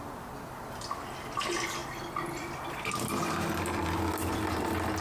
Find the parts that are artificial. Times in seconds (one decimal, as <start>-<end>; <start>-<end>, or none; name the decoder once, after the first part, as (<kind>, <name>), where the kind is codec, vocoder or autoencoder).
none